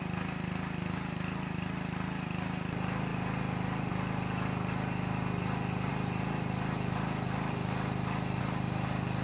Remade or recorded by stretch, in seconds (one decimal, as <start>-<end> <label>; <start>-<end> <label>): 0.0-9.2 recorded